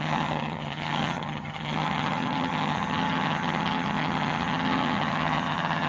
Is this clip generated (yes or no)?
yes